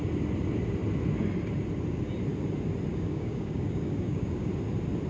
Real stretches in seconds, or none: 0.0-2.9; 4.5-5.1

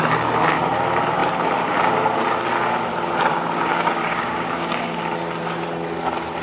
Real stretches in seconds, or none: 0.0-3.3; 5.0-6.4

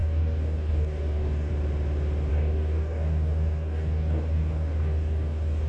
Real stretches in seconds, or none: 1.5-2.3

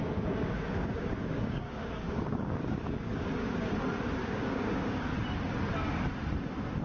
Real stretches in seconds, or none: 3.7-4.2; 5.1-6.8